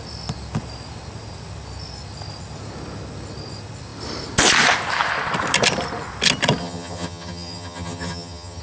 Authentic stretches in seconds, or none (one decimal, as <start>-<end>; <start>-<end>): 0.0-6.6